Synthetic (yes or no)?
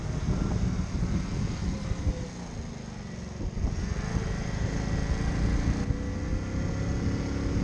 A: no